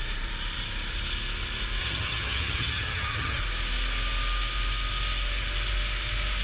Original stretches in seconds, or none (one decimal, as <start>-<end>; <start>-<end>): 0.0-1.8; 3.4-6.4